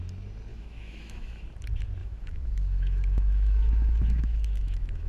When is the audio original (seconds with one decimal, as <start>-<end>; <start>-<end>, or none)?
0.0-0.5; 1.4-2.0